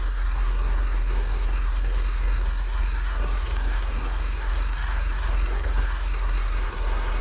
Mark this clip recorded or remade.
remade